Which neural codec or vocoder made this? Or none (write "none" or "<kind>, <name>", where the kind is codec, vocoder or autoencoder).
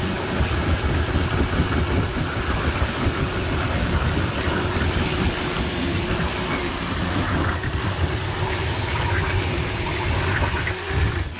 none